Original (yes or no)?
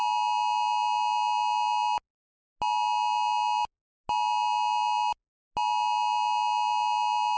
yes